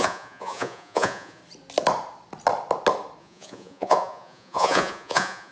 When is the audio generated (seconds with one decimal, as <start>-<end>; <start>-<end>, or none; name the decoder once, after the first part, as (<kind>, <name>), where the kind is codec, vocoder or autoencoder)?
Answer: 0.0-1.4 (vocoder, Vocos); 3.2-5.5